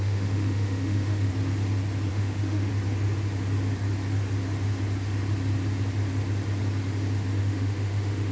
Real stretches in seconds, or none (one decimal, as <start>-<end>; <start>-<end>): 1.3-2.1; 2.7-7.4